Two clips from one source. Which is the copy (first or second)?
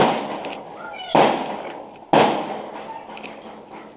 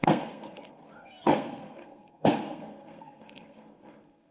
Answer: second